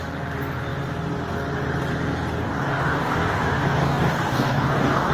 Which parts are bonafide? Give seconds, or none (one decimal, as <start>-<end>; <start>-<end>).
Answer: 0.0-2.4